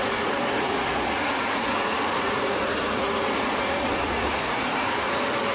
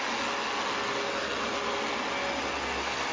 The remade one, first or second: first